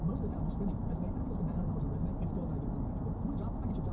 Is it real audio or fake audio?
real